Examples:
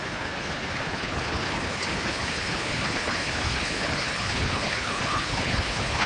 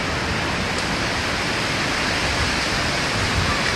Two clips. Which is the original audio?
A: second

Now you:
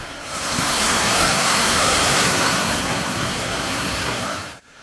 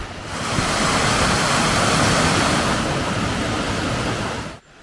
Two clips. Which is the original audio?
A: second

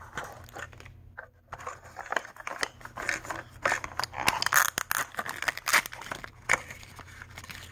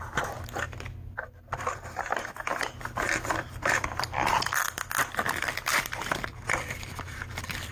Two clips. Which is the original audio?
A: first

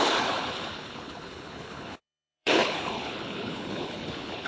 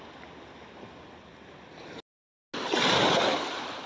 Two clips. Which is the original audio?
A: second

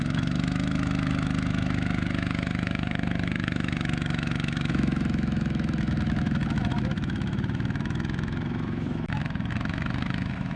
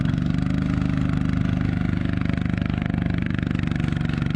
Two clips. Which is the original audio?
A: second